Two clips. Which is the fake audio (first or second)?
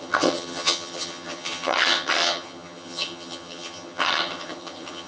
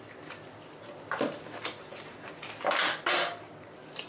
first